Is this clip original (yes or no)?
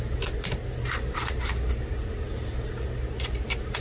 yes